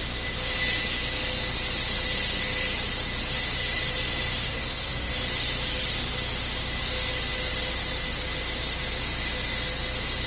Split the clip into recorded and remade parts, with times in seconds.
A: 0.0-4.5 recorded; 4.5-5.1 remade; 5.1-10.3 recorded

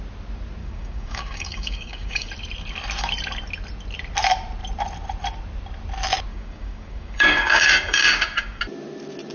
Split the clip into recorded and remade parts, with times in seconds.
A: 0.0-0.6 recorded; 0.6-2.3 remade; 2.3-6.3 recorded; 6.3-8.6 remade; 8.6-9.3 recorded

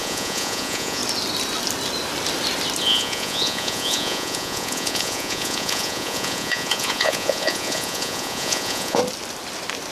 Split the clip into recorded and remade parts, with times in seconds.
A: 0.0-1.0 remade; 1.0-2.8 recorded; 2.8-9.0 remade; 9.0-9.9 recorded

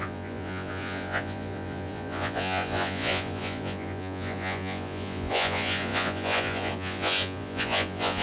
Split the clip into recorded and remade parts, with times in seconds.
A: 0.0-8.2 remade

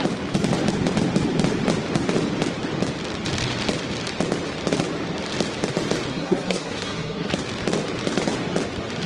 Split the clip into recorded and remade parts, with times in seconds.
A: 0.0-6.1 recorded; 6.1-7.3 remade; 7.3-9.1 recorded

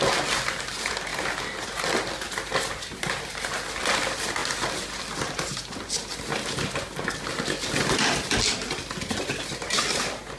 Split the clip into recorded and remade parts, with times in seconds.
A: 0.0-10.4 recorded

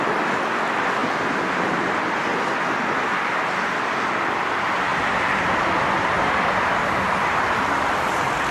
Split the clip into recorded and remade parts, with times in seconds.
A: 0.0-1.0 remade; 1.0-3.1 recorded; 3.1-8.5 remade